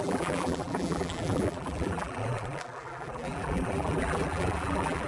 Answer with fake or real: fake